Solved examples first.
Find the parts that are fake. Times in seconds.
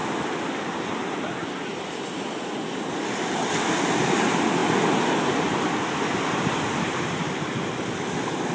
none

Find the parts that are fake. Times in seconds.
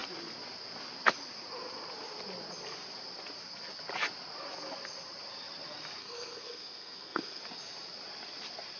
6.0-7.4 (codec, SNAC)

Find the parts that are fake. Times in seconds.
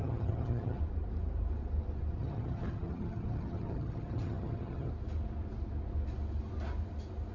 0.0-0.8 (vocoder, HiFi-GAN); 2.2-4.9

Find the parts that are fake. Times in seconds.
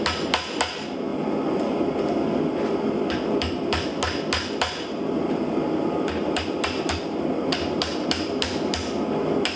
none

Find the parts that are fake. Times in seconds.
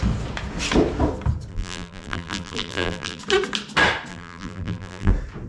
1.5-3.2 (vocoder, BigVGAN v2); 4.1-5.1